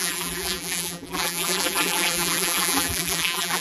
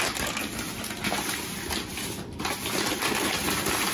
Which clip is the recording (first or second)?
second